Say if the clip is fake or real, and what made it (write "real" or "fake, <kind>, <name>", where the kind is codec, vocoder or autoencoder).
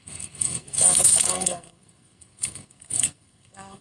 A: fake, codec, SNAC